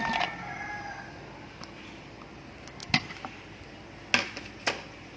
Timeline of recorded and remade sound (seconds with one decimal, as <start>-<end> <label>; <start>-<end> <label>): 0.0-5.2 recorded